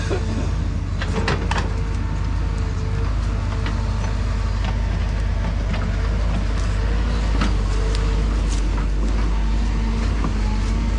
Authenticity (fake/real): real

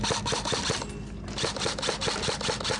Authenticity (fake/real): real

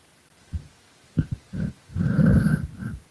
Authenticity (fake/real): real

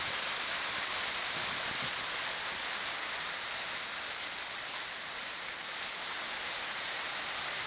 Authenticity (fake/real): real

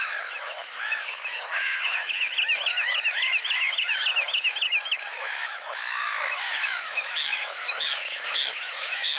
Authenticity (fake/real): fake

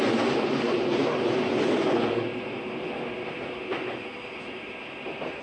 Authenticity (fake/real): real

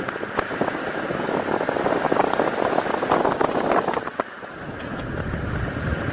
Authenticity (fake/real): real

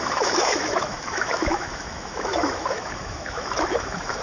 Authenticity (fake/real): fake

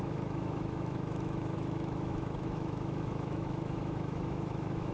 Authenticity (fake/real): fake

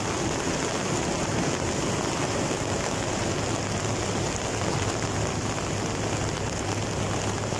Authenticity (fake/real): real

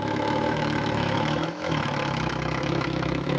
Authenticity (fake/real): fake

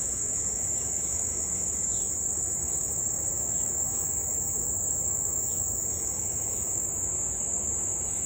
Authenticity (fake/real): fake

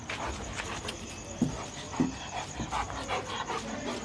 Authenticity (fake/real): real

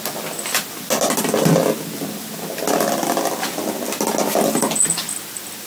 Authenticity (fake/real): real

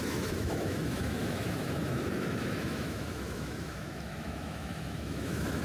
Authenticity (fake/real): fake